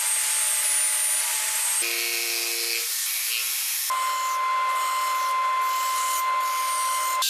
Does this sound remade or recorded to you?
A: recorded